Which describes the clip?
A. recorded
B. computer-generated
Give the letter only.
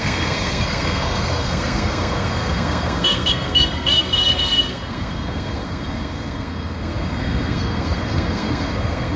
B